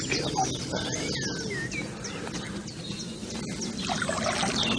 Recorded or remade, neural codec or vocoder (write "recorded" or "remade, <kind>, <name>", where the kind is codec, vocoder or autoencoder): recorded